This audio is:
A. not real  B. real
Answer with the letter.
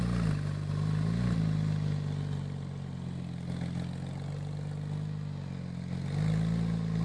B